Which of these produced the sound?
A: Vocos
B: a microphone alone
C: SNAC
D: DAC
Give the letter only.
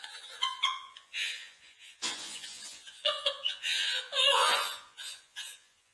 A